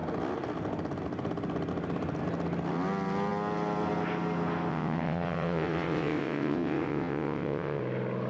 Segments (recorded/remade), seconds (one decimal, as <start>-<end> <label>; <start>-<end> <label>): 0.0-4.7 recorded; 4.7-7.8 remade; 7.8-8.3 recorded